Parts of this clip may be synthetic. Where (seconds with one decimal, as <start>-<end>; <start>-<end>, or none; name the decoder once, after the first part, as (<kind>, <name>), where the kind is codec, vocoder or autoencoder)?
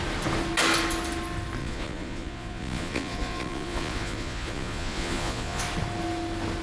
1.6-5.6 (vocoder, Vocos)